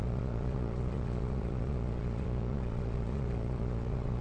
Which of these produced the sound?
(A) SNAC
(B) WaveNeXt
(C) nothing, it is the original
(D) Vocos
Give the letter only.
D